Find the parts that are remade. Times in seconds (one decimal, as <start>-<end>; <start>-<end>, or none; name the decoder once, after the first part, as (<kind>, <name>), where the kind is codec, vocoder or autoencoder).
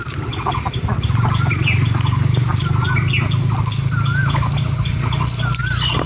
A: none